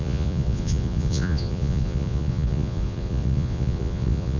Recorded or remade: remade